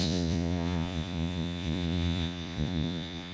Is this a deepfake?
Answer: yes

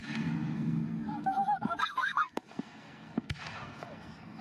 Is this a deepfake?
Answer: yes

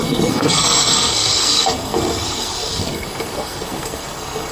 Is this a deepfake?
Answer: yes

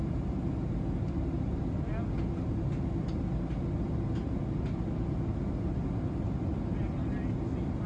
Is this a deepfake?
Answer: no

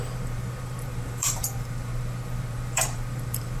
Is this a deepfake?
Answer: yes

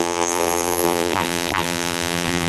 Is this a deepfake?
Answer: yes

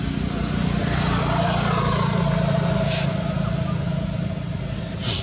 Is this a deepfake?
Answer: no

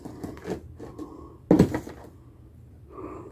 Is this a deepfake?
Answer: no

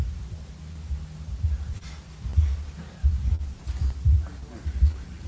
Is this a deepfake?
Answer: no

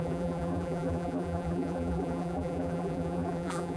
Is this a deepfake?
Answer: yes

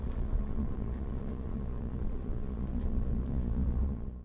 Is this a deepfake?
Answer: yes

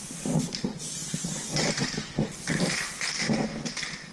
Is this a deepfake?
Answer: no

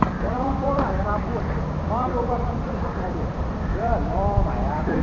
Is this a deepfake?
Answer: yes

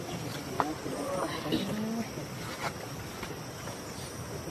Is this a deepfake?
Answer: no